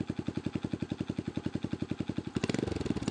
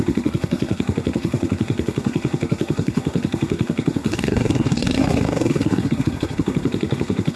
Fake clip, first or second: second